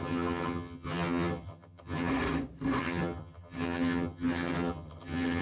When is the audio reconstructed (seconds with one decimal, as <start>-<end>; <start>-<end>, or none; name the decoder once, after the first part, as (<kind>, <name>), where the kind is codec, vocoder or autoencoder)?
0.0-2.1 (vocoder, HiFi-GAN); 2.8-5.4